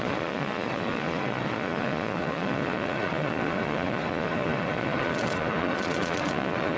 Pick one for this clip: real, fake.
fake